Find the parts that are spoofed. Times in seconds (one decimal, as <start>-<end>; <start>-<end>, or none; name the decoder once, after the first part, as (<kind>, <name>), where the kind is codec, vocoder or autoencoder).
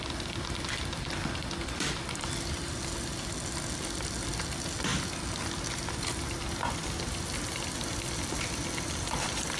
none